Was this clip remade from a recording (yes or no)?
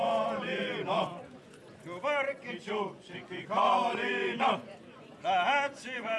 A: yes